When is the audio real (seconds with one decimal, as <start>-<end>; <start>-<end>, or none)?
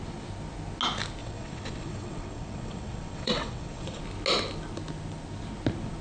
0.0-1.2; 4.0-6.0